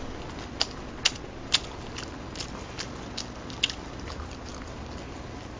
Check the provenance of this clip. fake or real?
real